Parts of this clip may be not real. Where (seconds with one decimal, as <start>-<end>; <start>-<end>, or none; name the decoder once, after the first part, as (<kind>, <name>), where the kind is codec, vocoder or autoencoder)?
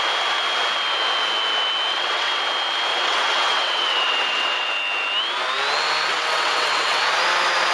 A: 1.9-2.4 (vocoder, WaveNeXt); 2.9-4.7; 6.1-7.0